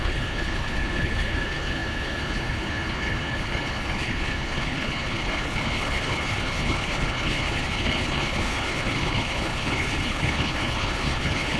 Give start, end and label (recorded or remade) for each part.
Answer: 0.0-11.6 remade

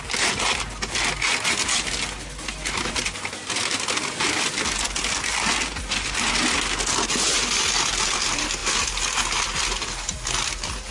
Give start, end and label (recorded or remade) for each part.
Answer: 0.0-10.9 recorded

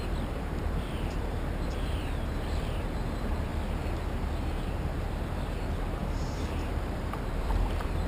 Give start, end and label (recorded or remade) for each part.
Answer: 0.0-3.5 remade; 3.5-4.1 recorded; 4.1-8.1 remade

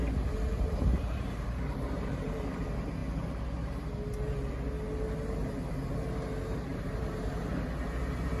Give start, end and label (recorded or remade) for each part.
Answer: 0.0-0.5 recorded; 0.5-2.6 remade; 2.6-6.7 recorded; 6.7-7.5 remade; 7.5-8.4 recorded

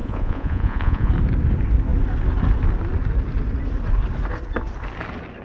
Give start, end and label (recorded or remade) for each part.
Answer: 0.0-1.1 remade; 1.1-5.4 recorded

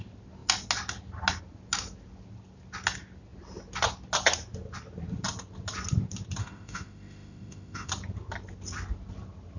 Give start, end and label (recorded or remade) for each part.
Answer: 0.0-6.4 recorded; 6.4-7.9 remade; 7.9-9.6 recorded